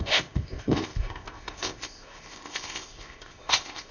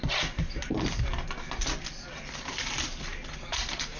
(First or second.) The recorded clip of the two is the second